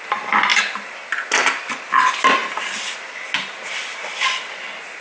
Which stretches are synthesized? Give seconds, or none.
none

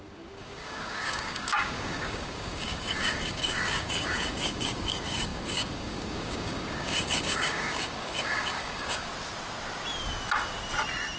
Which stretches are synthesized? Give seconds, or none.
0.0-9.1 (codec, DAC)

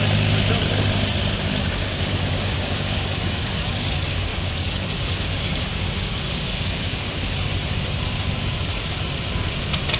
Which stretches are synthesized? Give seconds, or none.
1.8-3.8 (codec, DAC); 4.3-7.2

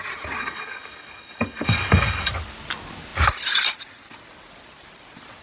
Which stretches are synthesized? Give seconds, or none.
0.4-2.3 (codec, DAC)

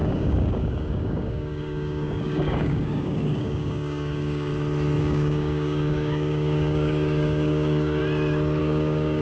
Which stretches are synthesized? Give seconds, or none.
0.0-4.5 (codec, DAC); 5.0-8.0; 8.6-9.2

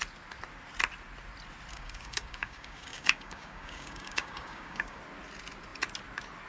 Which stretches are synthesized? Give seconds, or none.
1.7-5.0 (codec, DAC)

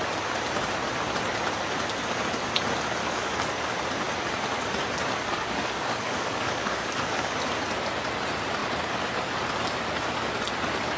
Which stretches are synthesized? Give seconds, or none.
3.0-3.8 (codec, DAC); 5.2-7.4

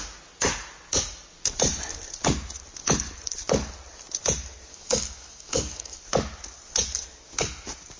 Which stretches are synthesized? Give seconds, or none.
4.7-6.0 (codec, DAC)